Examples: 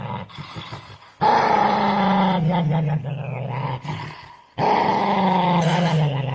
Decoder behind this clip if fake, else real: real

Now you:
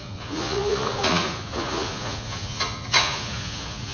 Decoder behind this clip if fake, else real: fake, vocoder, Vocos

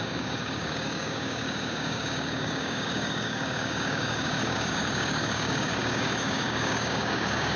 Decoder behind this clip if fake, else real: fake, codec, DAC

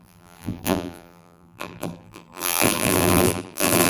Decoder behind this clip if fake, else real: fake, vocoder, BigVGAN v2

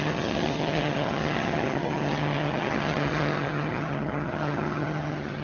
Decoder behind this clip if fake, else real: fake, vocoder, HiFi-GAN